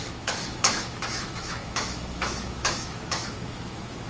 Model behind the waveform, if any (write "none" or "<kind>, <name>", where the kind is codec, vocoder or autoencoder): autoencoder, DAC-VAE